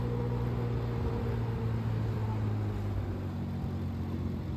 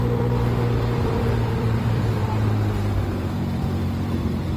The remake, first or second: second